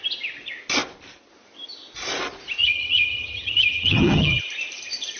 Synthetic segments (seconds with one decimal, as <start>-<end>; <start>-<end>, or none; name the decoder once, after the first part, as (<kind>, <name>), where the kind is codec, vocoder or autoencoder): 2.6-4.4 (vocoder, HiFi-GAN)